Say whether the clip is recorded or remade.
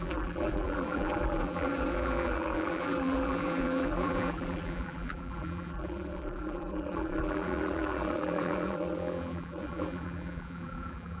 remade